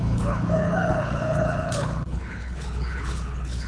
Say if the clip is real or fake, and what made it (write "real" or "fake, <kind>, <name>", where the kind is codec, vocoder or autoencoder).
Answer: fake, codec, HILCodec